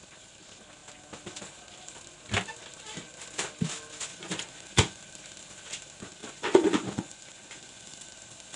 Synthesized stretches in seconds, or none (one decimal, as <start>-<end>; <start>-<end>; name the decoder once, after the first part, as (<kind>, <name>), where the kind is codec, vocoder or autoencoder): 4.1-5.0 (vocoder, Vocos); 6.2-8.1